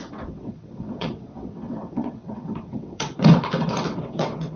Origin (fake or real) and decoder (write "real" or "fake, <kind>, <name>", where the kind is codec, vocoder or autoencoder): fake, vocoder, WaveNeXt